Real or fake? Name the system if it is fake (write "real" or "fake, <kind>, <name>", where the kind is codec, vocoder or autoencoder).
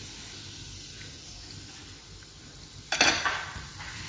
real